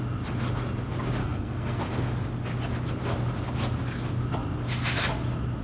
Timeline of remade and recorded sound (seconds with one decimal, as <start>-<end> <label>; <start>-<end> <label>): 0.0-1.2 recorded; 1.2-1.8 remade; 1.8-5.6 recorded